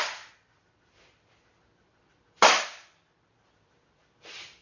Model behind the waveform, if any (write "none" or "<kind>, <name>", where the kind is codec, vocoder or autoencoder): none